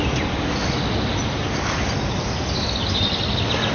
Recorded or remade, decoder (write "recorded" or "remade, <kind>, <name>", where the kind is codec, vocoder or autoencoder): recorded